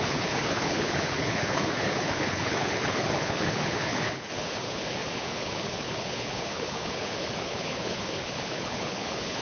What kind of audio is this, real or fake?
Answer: fake